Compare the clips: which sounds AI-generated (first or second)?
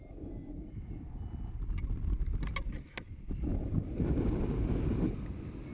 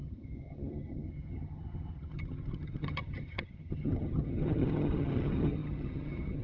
second